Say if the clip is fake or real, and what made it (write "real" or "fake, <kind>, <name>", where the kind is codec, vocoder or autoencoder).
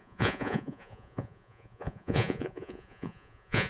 fake, vocoder, Vocos